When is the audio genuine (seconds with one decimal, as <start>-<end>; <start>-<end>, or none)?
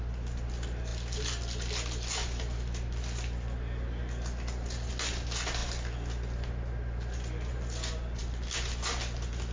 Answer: 0.0-9.5